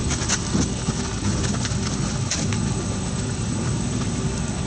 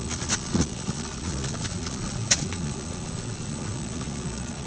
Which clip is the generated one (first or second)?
second